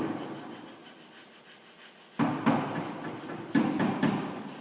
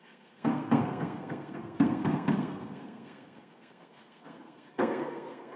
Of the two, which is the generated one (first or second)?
second